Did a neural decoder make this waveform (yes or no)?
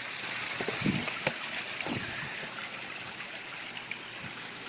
no